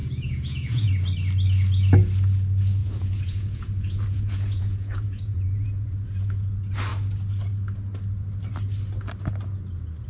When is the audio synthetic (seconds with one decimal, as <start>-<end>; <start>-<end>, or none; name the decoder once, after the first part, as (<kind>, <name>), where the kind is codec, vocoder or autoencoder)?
0.0-0.9 (vocoder, Vocos); 2.8-6.2

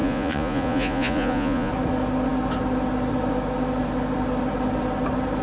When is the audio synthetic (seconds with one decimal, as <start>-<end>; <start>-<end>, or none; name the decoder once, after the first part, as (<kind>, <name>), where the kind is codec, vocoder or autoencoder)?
0.0-1.7 (vocoder, Vocos)

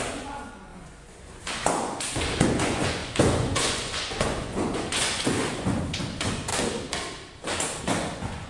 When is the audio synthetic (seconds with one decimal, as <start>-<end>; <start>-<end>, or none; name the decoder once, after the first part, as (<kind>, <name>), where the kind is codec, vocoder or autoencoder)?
0.0-6.5 (vocoder, Vocos); 7.8-8.5

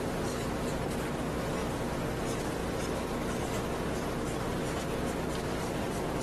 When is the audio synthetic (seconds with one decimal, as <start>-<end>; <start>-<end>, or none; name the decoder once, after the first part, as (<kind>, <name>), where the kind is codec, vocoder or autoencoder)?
none

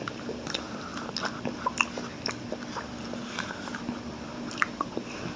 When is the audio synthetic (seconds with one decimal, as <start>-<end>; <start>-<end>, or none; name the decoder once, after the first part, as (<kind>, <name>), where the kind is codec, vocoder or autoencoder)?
none